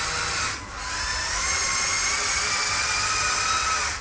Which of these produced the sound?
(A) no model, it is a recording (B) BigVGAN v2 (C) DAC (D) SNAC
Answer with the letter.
A